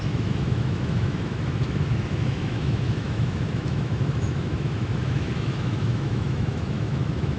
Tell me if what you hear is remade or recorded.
remade